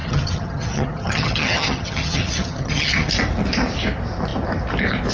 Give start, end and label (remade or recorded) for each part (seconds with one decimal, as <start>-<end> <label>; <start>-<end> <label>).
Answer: 0.0-3.1 remade; 3.1-5.1 recorded